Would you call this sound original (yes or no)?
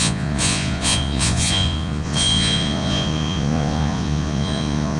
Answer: no